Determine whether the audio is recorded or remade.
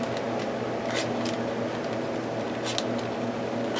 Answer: recorded